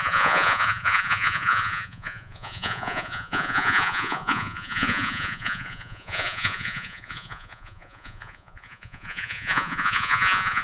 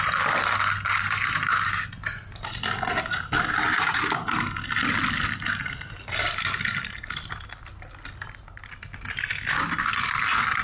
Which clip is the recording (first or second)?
second